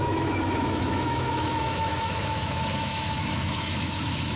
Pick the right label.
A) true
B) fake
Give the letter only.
B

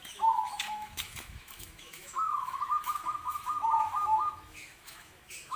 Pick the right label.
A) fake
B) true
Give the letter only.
A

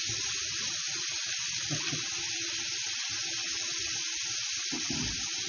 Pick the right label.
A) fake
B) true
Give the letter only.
B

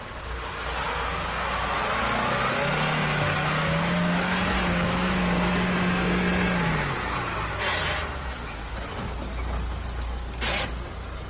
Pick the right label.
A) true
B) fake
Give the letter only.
A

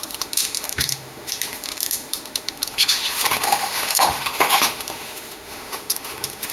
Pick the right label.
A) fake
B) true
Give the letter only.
A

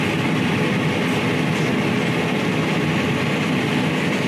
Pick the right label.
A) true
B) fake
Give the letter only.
A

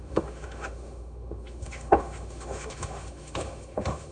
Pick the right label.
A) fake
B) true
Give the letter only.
A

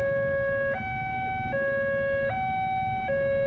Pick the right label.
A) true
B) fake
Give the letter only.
A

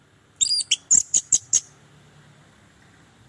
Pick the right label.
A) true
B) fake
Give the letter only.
A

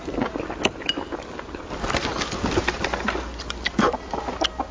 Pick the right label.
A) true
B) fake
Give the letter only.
A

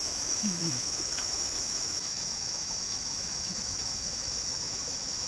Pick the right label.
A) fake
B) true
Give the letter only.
A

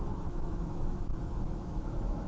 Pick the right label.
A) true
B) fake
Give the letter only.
B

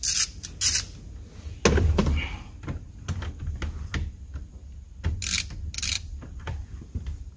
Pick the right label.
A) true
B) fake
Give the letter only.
A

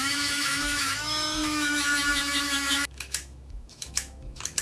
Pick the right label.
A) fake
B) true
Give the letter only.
A